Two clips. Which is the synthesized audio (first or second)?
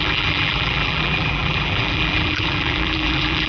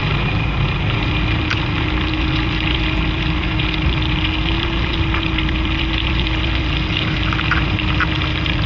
first